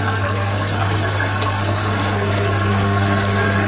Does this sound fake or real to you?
fake